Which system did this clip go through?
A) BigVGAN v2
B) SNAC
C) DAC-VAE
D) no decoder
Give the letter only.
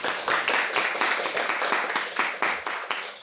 D